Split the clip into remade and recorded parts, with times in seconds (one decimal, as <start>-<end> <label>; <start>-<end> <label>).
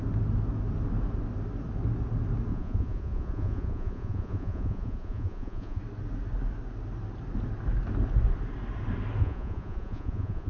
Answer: 0.0-2.5 recorded; 2.5-5.8 remade; 5.8-9.2 recorded; 9.2-10.5 remade